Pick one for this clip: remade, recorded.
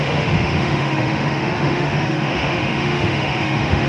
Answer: remade